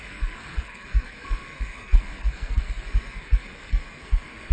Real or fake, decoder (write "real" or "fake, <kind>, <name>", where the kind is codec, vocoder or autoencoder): fake, codec, SNAC